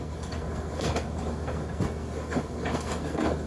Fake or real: fake